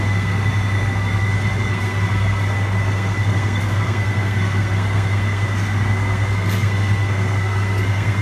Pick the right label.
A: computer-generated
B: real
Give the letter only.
A